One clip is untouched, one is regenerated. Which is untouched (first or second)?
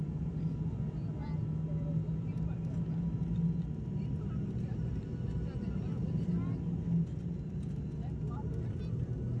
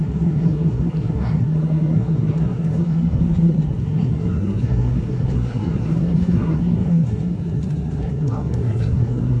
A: first